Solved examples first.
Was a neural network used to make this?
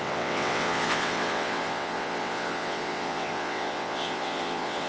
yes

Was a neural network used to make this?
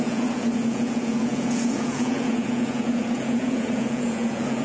yes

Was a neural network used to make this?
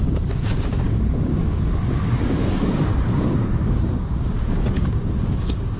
yes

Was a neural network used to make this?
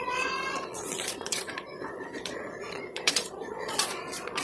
yes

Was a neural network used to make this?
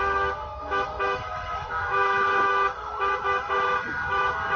yes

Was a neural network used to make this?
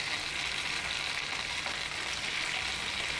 no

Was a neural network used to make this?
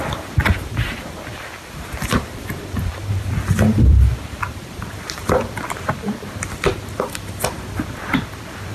yes